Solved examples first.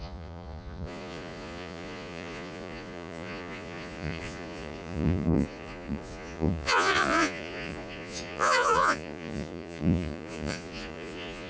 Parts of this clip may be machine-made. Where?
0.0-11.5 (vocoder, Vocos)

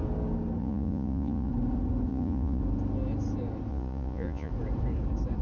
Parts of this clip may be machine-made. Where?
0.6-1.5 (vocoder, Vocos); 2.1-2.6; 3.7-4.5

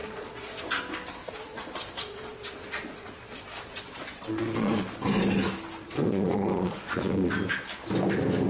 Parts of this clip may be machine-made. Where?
0.0-0.6 (vocoder, Vocos); 1.2-4.8; 5.8-7.3

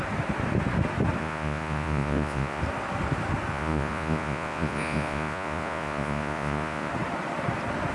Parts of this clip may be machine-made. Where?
1.2-2.6 (vocoder, Vocos); 3.5-6.9